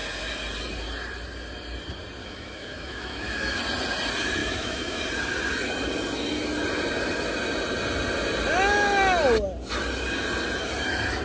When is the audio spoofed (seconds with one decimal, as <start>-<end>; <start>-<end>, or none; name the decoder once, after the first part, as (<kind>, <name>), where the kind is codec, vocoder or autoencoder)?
2.2-3.6 (autoencoder, DAC-VAE); 4.4-5.0